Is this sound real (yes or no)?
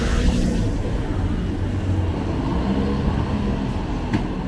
yes